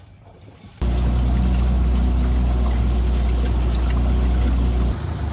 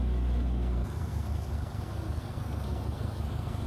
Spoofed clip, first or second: second